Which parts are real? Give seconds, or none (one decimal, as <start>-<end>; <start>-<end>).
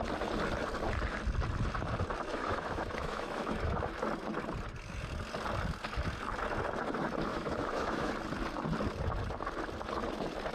0.0-2.3; 3.9-7.3; 8.1-10.5